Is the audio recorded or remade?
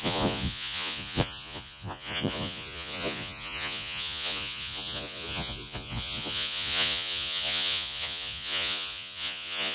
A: remade